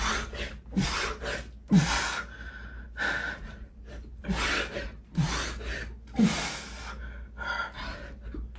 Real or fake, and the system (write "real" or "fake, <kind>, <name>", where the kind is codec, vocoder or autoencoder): real